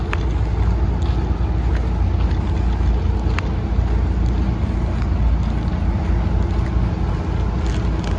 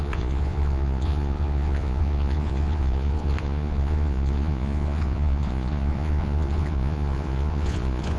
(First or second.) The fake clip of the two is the second